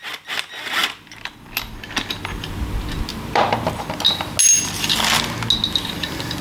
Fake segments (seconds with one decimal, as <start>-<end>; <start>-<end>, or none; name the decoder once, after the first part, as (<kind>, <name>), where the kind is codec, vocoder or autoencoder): 3.1-3.8 (vocoder, BigVGAN v2)